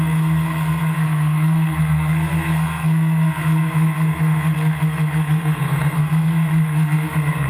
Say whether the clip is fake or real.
fake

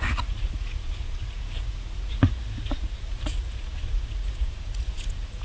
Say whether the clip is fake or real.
fake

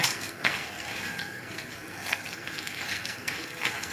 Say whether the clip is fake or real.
fake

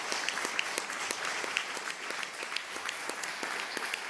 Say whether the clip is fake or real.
real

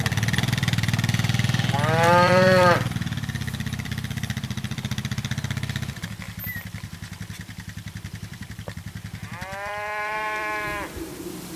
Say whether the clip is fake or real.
fake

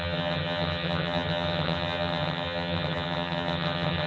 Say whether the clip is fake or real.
fake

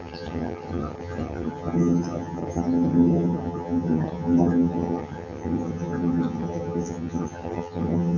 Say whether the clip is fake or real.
fake